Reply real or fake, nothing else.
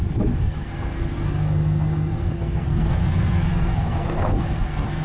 fake